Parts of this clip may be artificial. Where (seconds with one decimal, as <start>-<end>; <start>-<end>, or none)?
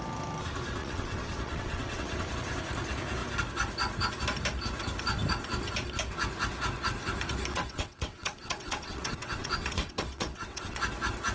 0.8-2.3; 7.5-10.8